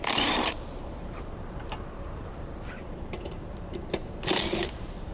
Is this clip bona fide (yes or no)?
no